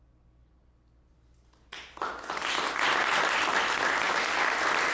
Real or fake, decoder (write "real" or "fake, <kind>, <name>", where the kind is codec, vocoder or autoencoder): real